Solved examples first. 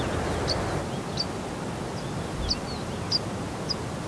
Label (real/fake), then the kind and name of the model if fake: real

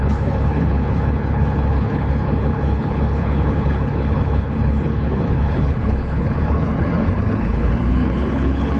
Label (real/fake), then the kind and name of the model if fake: fake, codec, HILCodec